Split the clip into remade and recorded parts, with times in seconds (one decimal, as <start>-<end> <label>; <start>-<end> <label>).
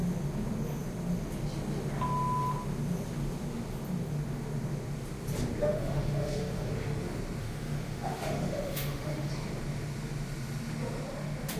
0.0-5.6 recorded; 5.6-6.7 remade; 6.7-7.4 recorded; 7.4-9.3 remade; 9.3-11.6 recorded